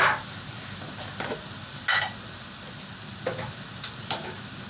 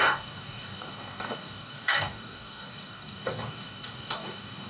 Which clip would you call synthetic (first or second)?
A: second